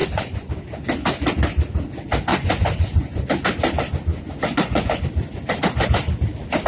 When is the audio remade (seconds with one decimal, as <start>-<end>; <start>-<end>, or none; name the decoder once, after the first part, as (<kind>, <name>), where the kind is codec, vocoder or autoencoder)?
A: 0.0-0.5 (vocoder, Vocos); 2.3-3.3; 4.1-5.0